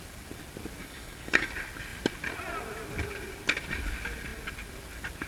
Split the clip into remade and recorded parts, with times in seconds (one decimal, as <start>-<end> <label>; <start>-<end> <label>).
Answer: 0.0-0.8 recorded; 0.8-1.5 remade; 1.5-5.3 recorded